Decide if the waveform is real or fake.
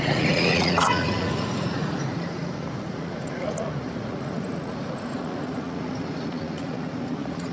fake